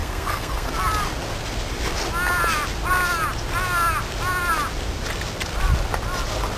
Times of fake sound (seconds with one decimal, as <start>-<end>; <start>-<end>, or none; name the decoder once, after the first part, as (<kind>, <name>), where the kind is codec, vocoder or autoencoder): 0.0-0.7 (codec, SNAC)